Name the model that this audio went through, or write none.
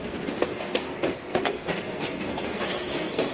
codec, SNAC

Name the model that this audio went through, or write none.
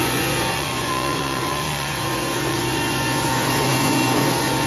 vocoder, Vocos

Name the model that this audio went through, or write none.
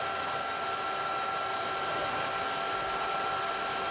none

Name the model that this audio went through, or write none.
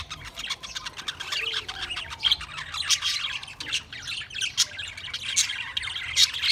none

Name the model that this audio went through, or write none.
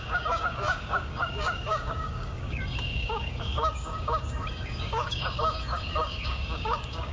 codec, DAC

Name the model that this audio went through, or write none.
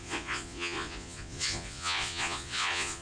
vocoder, Vocos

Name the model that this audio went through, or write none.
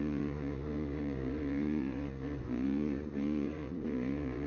vocoder, Vocos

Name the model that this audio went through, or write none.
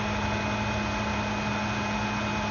none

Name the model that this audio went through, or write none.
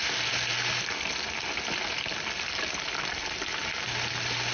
none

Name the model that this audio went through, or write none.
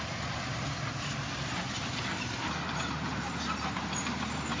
vocoder, BigVGAN v2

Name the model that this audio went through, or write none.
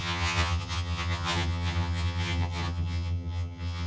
vocoder, HiFi-GAN